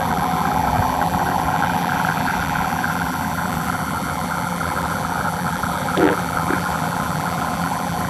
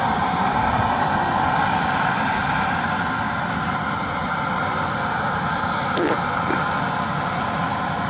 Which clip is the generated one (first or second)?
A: first